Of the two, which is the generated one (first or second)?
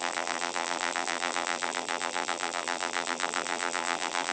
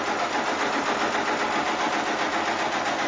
first